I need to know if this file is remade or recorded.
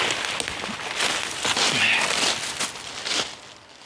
recorded